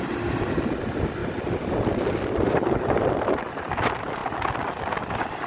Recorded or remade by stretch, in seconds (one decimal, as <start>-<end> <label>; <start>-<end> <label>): 0.0-4.2 remade; 4.2-5.5 recorded